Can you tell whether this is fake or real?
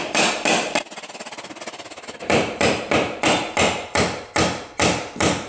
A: real